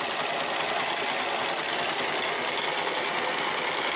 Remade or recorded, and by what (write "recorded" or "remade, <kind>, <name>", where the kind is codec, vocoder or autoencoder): recorded